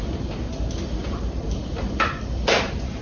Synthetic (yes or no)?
yes